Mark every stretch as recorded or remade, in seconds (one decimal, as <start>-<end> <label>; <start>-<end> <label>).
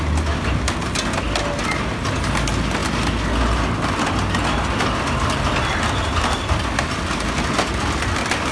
0.0-8.5 recorded